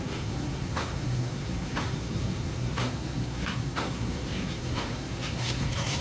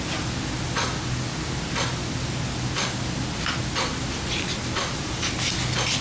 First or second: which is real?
second